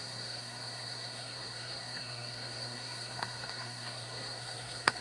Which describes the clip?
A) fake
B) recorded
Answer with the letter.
A